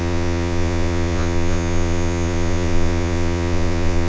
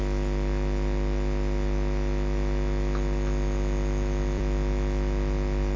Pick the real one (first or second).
second